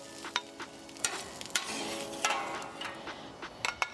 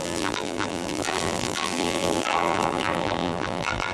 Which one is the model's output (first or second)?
second